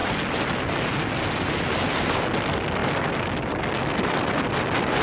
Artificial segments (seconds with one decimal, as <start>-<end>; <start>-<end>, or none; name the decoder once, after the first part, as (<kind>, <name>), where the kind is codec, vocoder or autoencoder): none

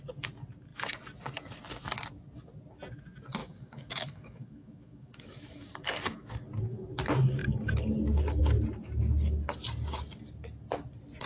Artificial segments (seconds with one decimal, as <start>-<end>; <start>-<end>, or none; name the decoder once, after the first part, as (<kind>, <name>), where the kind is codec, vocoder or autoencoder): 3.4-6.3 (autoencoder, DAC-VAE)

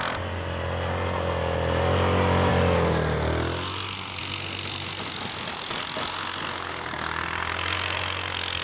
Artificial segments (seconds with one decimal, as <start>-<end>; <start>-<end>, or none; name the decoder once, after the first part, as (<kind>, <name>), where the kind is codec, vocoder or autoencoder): none

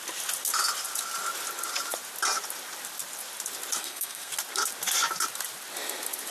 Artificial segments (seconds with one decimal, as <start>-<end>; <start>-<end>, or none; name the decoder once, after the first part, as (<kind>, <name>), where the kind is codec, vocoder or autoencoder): 3.8-4.3 (codec, SNAC)

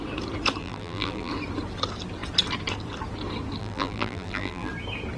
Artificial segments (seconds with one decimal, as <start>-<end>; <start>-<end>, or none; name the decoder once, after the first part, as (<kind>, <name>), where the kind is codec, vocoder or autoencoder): 0.6-1.3 (vocoder, BigVGAN v2); 3.6-4.7

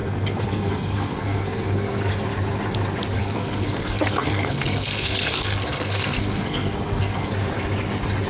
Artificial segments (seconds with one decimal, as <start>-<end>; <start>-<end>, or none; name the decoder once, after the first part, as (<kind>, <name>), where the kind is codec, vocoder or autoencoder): 0.0-2.1 (codec, SNAC); 3.2-7.3

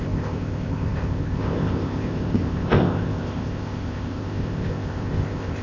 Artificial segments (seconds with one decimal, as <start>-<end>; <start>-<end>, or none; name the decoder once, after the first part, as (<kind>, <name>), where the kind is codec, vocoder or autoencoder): 0.0-5.6 (codec, ZipCodec)